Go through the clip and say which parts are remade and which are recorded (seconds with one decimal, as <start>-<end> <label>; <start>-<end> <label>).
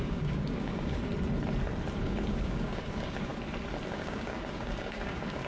0.0-1.1 remade; 1.1-2.0 recorded; 2.0-3.3 remade; 3.3-3.9 recorded; 3.9-5.5 remade